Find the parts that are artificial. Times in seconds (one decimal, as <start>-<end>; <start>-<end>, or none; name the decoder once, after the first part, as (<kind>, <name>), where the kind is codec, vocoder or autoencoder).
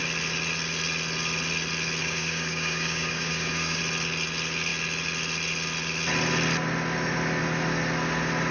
2.0-3.8 (codec, DAC)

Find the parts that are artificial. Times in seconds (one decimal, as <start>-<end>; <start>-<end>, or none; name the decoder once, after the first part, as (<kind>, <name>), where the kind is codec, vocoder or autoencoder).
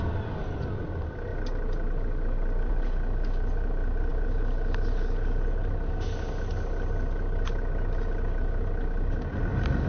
none